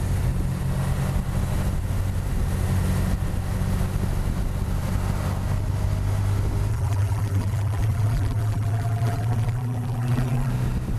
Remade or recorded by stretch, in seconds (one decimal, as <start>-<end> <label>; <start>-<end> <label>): 0.0-6.7 recorded; 6.7-10.5 remade; 10.5-11.0 recorded